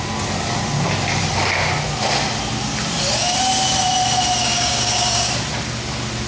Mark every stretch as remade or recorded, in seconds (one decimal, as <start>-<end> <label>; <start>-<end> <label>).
0.0-4.4 recorded; 4.4-5.3 remade; 5.3-6.3 recorded